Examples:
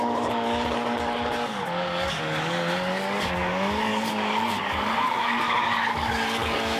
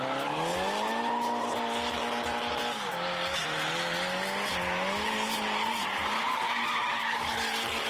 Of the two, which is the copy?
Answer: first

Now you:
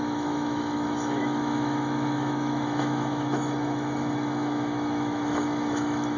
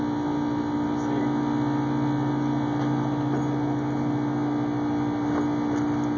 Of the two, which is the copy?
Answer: first